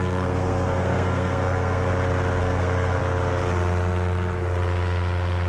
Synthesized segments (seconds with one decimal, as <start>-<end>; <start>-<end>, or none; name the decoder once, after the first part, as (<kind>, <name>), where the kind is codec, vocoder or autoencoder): 0.0-1.9 (codec, SNAC); 2.4-3.0